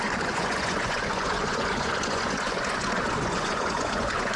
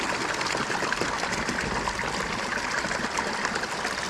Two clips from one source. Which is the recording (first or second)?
second